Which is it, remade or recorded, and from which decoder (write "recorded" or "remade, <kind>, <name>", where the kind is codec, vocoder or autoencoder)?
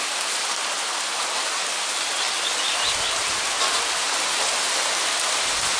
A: recorded